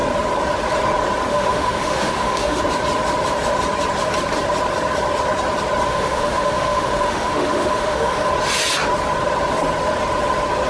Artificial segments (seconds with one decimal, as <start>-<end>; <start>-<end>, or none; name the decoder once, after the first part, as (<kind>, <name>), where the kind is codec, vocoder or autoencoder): 1.3-2.6 (autoencoder, DAC-VAE); 5.9-8.3